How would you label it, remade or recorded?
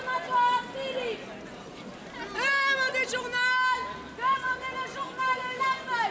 recorded